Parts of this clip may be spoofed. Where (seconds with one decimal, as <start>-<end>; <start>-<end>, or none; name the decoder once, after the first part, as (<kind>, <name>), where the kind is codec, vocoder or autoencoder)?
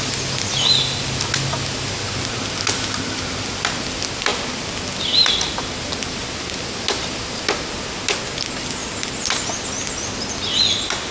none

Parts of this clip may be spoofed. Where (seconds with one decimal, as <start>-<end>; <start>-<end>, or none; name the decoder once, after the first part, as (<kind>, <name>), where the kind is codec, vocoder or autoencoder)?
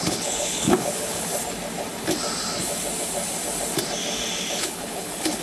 0.0-1.3 (codec, HILCodec); 4.5-5.4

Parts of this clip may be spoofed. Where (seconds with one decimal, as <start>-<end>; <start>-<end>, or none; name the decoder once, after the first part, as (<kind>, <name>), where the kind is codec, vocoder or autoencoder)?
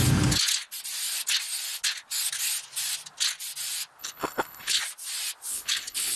4.0-4.8 (codec, HILCodec); 5.5-6.2